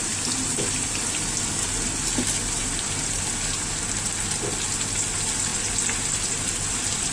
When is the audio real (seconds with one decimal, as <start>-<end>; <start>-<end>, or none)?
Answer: 0.0-7.1